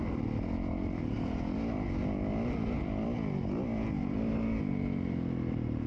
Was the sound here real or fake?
real